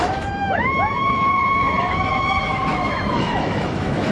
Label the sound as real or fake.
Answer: fake